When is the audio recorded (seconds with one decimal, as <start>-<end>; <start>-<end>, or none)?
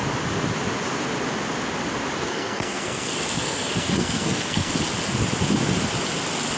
0.0-2.3; 4.7-6.6